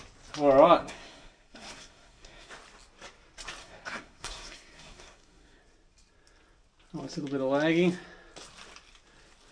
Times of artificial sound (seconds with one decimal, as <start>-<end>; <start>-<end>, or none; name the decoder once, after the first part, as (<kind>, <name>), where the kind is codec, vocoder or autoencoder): 0.8-2.5 (codec, SNAC); 3.6-5.6